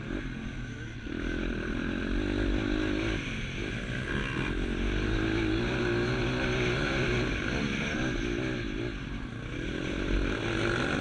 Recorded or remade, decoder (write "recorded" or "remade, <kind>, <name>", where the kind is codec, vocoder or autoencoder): recorded